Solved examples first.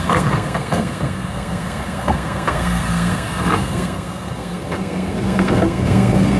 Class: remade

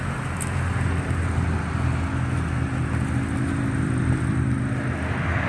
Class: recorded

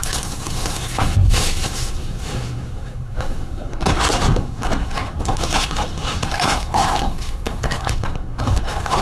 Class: remade